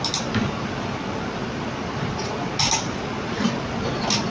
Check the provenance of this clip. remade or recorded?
recorded